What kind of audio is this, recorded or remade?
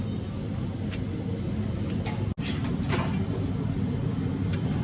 recorded